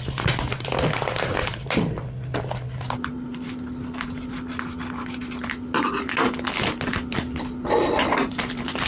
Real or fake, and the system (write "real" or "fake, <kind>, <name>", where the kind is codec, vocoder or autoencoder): real